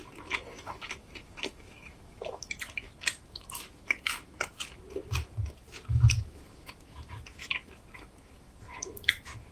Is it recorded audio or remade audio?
remade